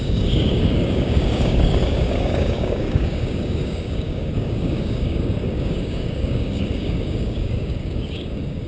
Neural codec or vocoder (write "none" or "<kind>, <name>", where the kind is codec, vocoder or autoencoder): codec, DAC